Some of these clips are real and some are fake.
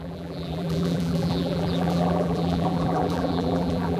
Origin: fake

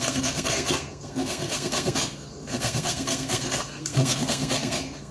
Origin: fake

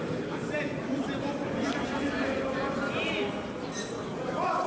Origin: real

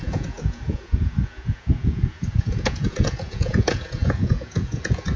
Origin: fake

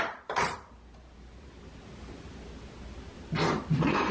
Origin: real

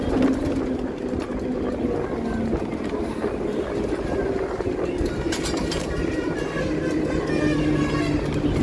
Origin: real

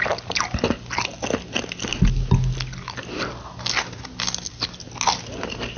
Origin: real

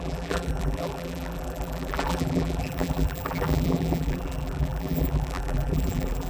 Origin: fake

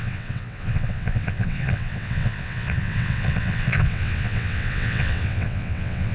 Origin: fake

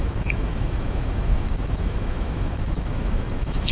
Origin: fake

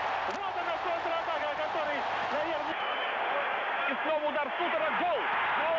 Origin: real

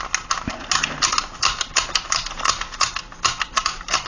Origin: real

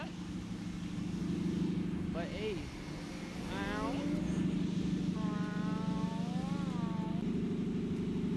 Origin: real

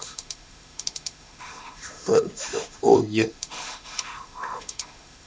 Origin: fake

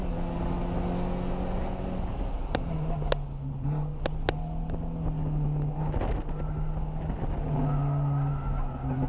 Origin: real